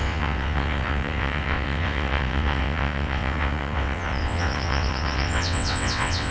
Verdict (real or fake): fake